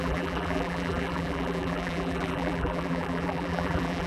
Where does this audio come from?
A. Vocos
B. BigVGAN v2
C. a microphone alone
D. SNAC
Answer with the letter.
B